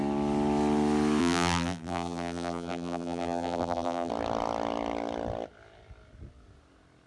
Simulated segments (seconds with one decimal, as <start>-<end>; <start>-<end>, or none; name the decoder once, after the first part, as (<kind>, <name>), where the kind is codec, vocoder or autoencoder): 1.2-4.1 (vocoder, BigVGAN v2)